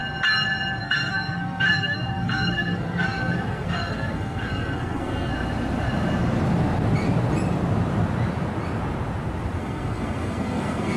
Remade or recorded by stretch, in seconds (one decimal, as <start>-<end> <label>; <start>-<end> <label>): 0.0-0.8 recorded; 0.8-5.3 remade; 5.3-9.6 recorded; 9.6-11.0 remade